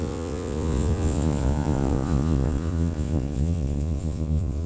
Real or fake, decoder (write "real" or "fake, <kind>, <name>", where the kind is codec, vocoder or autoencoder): fake, vocoder, Vocos